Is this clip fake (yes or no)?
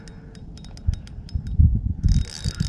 no